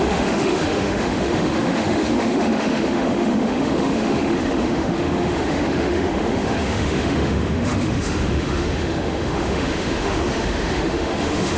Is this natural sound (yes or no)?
no